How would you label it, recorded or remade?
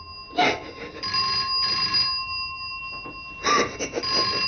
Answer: recorded